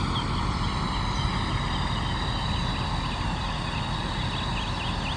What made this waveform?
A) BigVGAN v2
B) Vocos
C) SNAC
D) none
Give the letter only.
D